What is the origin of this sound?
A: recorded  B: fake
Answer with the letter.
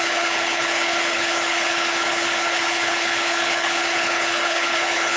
B